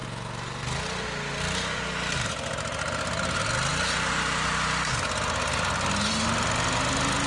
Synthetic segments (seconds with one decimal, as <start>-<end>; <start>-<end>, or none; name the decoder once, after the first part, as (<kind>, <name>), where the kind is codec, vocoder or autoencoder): none